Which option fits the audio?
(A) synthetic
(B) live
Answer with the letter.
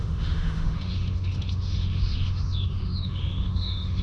A